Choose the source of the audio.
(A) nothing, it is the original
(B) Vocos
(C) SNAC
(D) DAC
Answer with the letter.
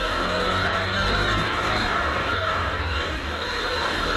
D